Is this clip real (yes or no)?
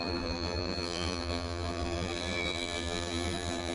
no